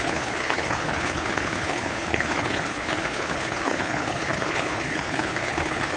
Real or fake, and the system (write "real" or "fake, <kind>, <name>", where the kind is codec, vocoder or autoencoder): fake, codec, HILCodec